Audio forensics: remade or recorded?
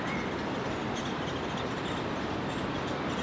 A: recorded